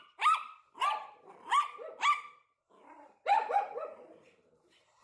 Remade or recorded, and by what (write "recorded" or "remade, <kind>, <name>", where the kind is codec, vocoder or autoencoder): recorded